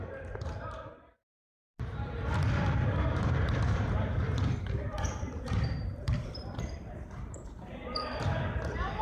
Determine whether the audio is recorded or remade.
remade